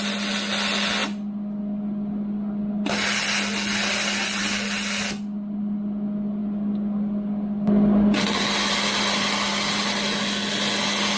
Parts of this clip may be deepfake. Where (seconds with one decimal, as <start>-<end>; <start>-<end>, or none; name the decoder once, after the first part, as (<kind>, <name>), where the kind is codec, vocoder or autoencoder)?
none